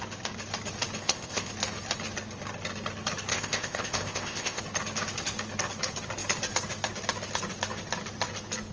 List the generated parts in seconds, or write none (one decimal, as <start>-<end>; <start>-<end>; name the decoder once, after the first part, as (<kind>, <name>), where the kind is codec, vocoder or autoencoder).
1.0-1.5 (codec, ZipCodec); 3.3-4.6